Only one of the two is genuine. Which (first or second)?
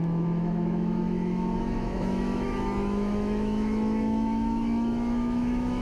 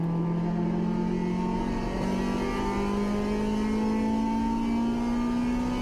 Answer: second